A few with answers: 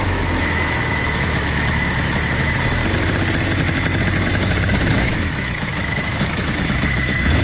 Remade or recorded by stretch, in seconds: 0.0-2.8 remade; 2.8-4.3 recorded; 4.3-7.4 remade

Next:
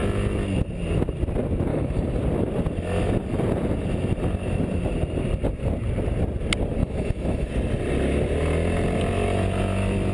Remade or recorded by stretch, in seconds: 0.0-1.7 recorded; 1.7-2.2 remade; 2.2-6.8 recorded; 6.8-7.5 remade; 7.5-10.1 recorded

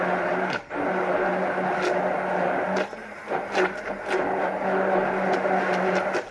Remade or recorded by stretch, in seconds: 0.0-6.3 recorded